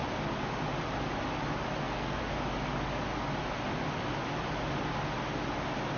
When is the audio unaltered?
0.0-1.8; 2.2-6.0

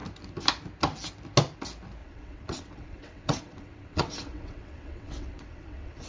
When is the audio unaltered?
0.0-2.0